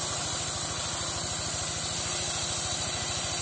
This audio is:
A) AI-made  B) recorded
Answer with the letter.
B